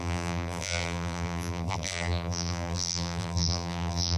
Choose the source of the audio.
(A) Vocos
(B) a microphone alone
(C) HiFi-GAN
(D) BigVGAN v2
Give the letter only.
D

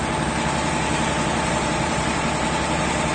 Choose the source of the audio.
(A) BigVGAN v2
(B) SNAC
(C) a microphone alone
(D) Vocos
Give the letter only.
A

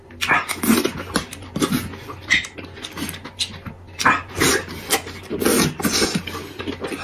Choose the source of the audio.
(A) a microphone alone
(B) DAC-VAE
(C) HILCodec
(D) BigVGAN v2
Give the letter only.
A